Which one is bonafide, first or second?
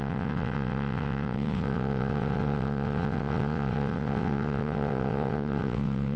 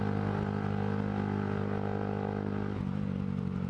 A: second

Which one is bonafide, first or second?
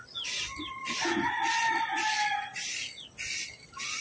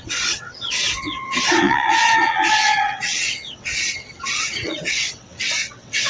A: first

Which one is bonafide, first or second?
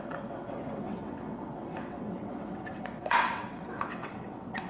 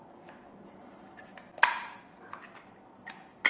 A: second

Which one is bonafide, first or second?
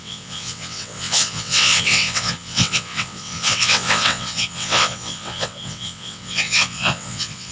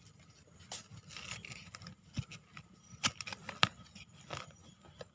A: second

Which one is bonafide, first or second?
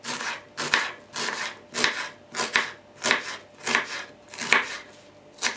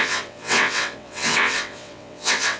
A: first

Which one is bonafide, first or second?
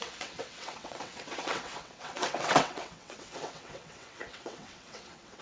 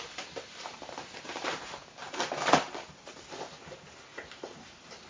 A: second